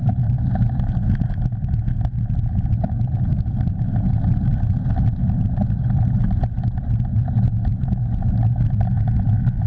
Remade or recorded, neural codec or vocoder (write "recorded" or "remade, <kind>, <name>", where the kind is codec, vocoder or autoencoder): recorded